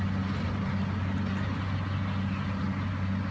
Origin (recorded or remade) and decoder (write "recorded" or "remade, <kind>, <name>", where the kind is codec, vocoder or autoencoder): recorded